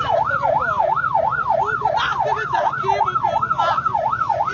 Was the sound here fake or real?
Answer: real